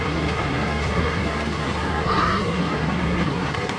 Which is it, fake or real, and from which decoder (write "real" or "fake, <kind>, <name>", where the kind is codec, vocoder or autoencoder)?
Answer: fake, codec, SNAC